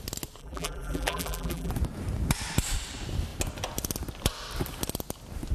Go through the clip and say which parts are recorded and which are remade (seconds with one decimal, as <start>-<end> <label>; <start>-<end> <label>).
0.0-0.4 recorded; 0.4-1.7 remade; 1.7-5.5 recorded